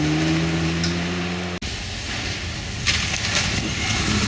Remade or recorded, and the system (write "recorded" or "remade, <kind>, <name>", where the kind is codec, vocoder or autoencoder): recorded